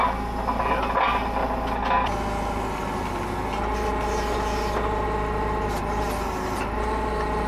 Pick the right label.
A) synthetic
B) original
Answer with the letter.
B